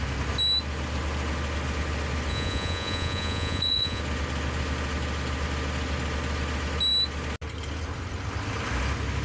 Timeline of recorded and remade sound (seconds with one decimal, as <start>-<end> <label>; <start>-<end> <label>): 0.0-2.3 recorded; 2.3-4.0 remade; 4.0-9.2 recorded